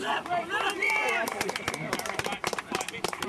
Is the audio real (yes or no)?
no